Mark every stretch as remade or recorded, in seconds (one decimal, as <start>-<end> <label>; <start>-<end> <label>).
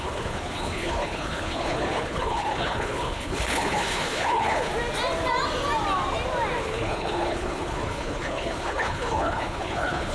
0.0-4.7 remade; 4.7-6.6 recorded; 6.6-10.1 remade